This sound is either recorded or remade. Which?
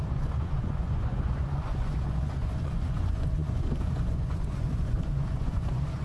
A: remade